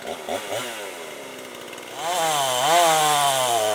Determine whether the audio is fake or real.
real